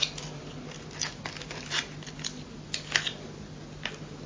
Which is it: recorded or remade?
recorded